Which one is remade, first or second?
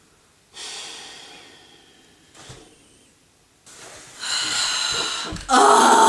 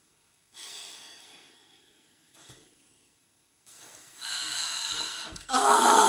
second